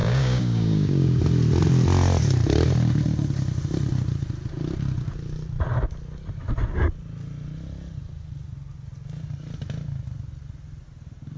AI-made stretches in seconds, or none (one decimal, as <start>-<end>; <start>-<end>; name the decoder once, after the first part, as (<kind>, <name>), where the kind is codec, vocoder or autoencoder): 0.0-1.2 (codec, DAC)